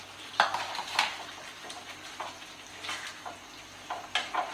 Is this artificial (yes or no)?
no